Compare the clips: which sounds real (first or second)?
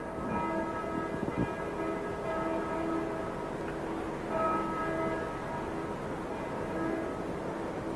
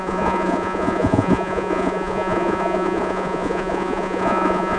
first